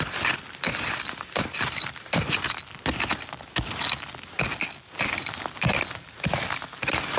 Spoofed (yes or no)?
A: no